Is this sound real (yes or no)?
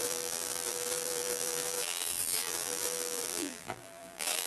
no